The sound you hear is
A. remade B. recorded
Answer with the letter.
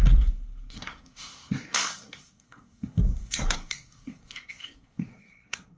A